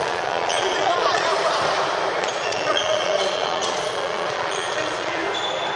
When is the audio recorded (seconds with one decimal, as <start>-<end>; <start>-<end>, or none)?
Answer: 1.3-2.2; 5.2-5.8